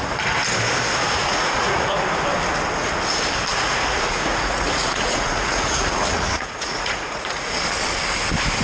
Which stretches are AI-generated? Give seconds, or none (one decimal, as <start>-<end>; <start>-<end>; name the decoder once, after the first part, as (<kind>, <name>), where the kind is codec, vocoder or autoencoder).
1.2-2.0 (vocoder, Vocos); 3.5-7.6